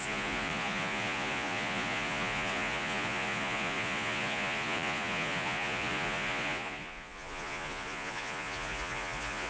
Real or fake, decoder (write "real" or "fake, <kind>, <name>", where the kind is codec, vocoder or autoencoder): fake, vocoder, Vocos